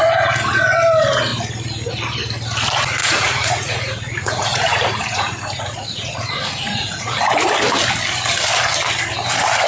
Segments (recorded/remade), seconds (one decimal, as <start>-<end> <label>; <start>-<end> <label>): 0.0-3.0 recorded; 3.0-7.2 remade; 7.2-9.7 recorded